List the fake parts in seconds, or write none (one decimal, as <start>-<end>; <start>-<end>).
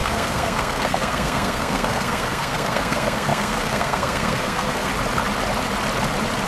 0.0-4.9